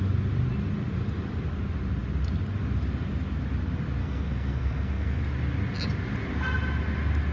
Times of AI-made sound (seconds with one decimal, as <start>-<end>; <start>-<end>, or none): 4.0-5.2